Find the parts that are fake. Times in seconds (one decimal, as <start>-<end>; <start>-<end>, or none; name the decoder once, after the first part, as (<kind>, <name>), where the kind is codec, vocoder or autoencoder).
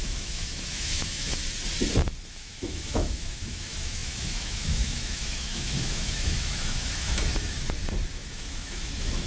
0.0-1.4 (autoencoder, DAC-VAE); 2.3-7.3; 8.1-9.3